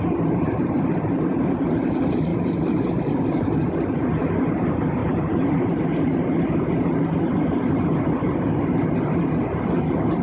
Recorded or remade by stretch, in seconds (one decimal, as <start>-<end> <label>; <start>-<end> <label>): 0.0-10.2 recorded